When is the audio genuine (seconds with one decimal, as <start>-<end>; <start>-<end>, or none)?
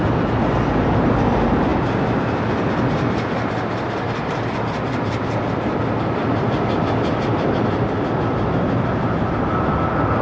0.0-10.2